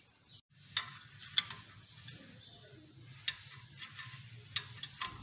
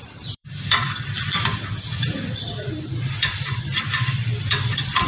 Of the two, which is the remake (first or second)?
second